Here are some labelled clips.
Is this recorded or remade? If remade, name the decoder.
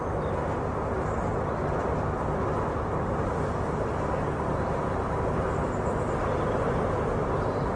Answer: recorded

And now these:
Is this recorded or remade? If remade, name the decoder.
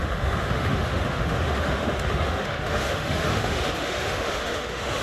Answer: remade, autoencoder, DAC-VAE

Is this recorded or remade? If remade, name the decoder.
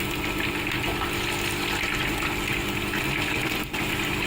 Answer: recorded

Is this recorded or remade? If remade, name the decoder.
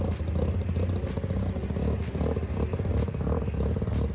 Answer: recorded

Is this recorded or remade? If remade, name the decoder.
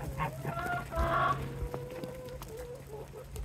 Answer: recorded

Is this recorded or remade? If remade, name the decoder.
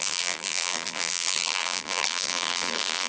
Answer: remade, vocoder, BigVGAN v2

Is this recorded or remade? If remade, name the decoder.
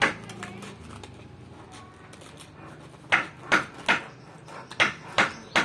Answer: recorded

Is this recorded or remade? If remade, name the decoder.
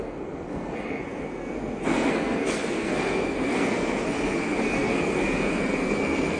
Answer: remade, codec, SNAC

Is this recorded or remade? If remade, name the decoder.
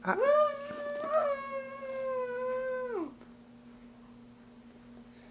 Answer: recorded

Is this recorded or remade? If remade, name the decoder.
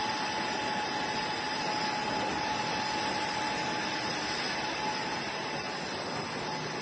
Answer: recorded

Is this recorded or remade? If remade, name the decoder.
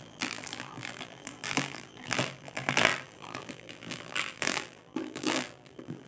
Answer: remade, vocoder, BigVGAN v2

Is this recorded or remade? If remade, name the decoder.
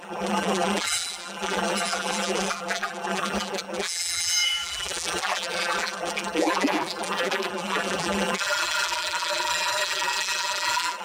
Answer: remade, vocoder, BigVGAN v2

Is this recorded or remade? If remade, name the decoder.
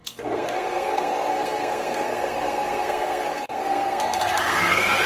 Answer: remade, codec, SNAC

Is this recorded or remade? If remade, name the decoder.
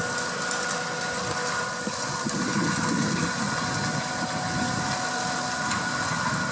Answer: recorded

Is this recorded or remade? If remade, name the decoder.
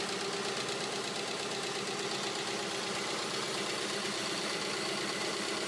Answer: recorded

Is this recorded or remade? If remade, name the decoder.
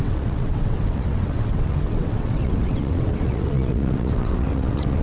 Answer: remade, vocoder, WaveNeXt